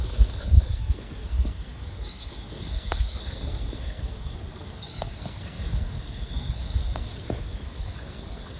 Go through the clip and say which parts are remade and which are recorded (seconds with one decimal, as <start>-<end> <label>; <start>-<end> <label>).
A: 0.0-8.6 remade